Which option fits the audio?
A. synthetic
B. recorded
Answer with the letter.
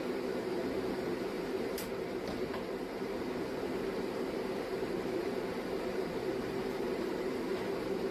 A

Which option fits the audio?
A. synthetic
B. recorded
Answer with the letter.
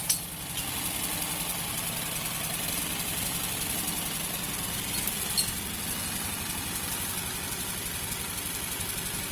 B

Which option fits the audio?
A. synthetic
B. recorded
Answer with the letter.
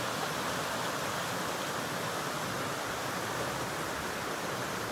B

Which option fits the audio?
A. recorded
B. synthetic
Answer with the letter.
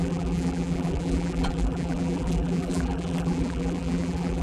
B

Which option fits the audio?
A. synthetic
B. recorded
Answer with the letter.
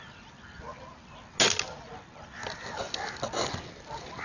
B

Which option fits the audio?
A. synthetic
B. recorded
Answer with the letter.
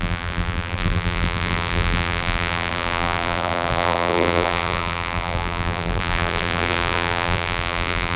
A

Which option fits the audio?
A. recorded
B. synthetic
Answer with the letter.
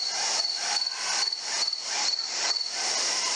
A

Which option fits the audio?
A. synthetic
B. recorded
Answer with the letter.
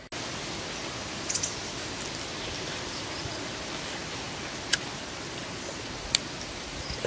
B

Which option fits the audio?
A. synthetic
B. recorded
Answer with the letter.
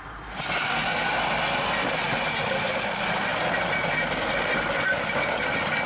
B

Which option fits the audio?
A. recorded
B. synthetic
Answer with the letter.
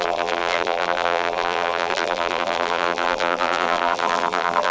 B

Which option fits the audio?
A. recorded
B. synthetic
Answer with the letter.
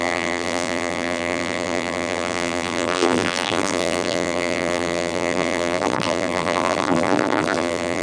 B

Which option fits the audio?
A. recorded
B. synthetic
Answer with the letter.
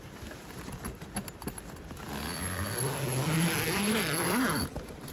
A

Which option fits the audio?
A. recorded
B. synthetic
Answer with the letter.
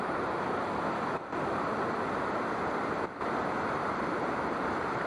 B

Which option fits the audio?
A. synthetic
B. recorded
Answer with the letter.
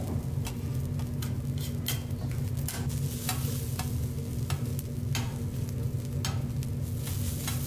B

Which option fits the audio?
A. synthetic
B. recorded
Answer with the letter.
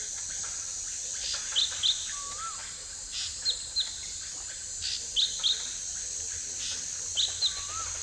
B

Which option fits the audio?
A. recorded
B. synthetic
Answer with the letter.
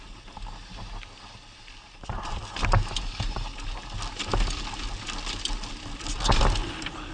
A